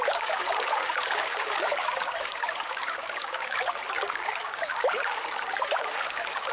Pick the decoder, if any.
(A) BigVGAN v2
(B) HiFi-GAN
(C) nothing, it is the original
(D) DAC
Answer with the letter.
D